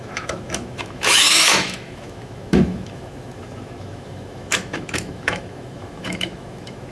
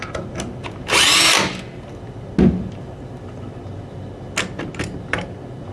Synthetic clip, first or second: first